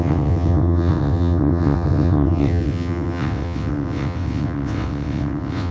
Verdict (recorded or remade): remade